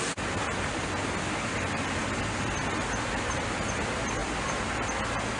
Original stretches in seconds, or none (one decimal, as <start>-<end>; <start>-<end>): 0.0-4.2; 5.0-5.4